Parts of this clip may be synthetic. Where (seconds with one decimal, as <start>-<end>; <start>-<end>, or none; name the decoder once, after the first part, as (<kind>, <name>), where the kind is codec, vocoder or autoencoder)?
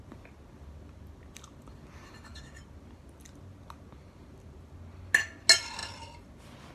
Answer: none